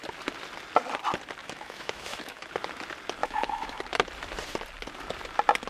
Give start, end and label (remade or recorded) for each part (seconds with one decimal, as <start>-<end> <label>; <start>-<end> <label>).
0.0-1.4 recorded; 1.4-2.5 remade; 2.5-3.2 recorded; 3.2-3.8 remade; 3.8-5.7 recorded